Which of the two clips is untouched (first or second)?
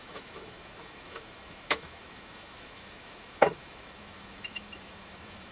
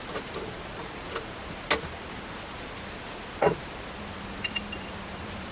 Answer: second